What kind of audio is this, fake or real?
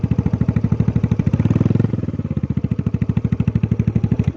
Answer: fake